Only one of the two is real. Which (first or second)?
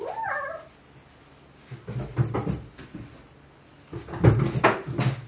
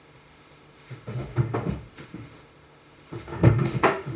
first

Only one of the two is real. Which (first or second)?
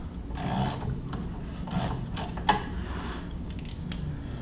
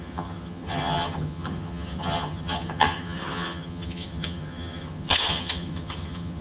first